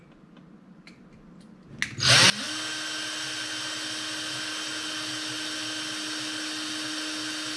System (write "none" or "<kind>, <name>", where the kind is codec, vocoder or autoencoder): none